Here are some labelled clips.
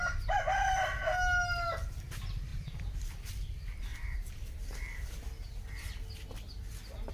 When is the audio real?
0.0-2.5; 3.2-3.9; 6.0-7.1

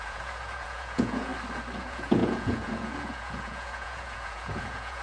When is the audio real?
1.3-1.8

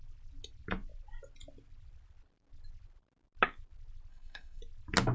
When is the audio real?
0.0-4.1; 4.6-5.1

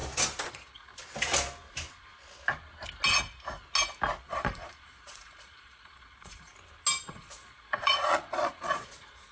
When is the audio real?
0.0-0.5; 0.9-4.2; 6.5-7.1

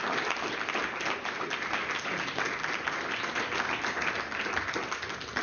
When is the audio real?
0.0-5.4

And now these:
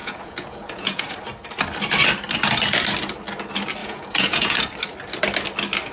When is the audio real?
1.0-3.8; 4.6-5.9